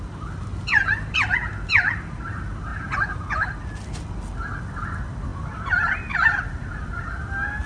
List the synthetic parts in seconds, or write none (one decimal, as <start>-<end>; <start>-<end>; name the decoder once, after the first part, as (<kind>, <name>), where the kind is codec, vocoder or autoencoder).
none